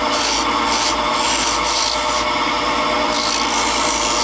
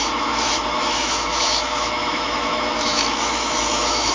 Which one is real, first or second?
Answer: first